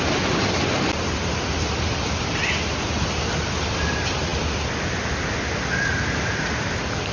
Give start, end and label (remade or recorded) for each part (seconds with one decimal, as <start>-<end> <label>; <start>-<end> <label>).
0.0-7.1 recorded